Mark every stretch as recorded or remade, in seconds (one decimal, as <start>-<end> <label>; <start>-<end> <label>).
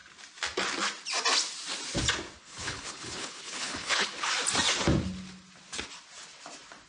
0.0-2.4 recorded; 2.4-4.3 remade; 4.3-6.9 recorded